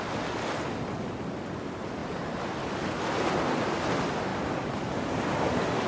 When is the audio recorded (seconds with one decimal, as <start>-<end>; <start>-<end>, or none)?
0.0-5.9